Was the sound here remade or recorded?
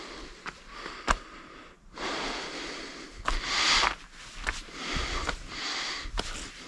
recorded